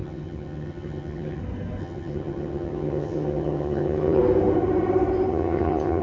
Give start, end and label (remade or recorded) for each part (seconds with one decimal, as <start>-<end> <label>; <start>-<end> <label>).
0.0-1.4 remade; 1.4-1.8 recorded; 1.8-4.2 remade; 4.2-5.3 recorded; 5.3-6.0 remade